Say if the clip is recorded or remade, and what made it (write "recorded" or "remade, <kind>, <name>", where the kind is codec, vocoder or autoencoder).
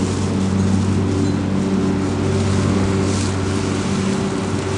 recorded